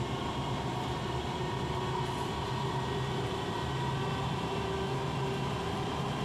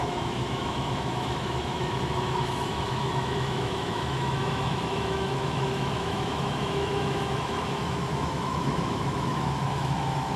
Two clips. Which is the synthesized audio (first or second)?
second